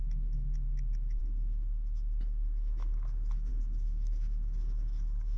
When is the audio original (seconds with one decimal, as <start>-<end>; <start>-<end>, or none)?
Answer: 0.0-5.4